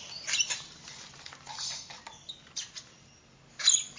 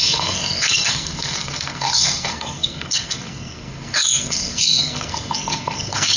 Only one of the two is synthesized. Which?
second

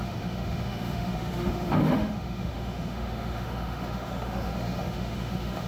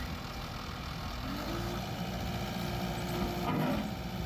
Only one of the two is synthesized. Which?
first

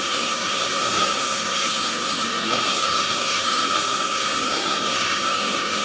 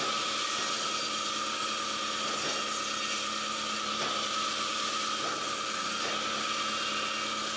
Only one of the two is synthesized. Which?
first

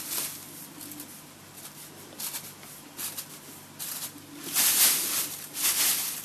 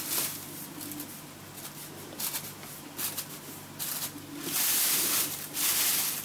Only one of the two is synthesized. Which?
first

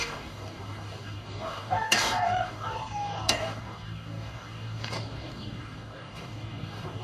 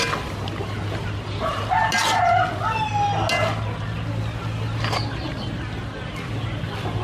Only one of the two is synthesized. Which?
first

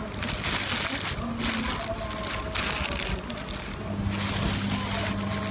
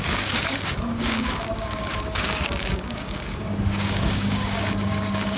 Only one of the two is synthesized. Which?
second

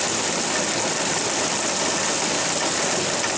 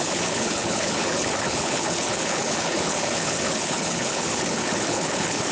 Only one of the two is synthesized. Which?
second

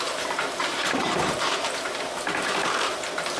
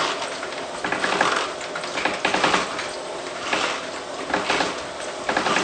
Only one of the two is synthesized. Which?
first